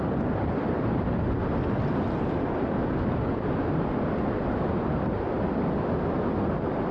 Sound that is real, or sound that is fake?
real